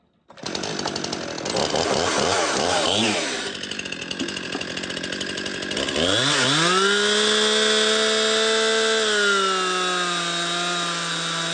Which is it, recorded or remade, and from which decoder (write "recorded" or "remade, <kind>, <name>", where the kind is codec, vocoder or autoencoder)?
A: recorded